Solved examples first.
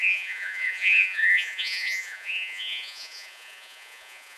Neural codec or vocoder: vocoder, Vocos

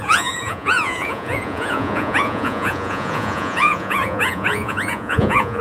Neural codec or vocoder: vocoder, Vocos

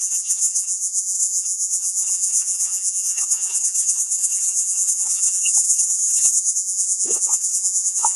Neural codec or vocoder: vocoder, Vocos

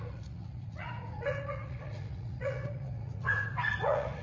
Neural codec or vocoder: vocoder, Vocos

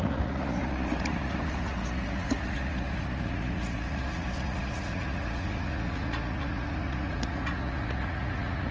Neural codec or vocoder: vocoder, Vocos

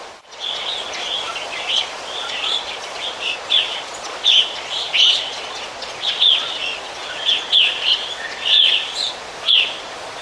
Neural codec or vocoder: vocoder, Vocos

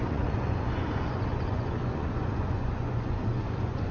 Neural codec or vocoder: vocoder, Vocos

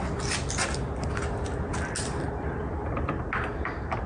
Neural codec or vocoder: none